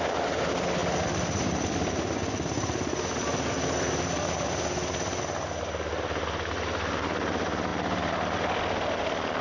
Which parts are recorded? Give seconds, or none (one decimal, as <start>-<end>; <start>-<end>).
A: 0.0-9.4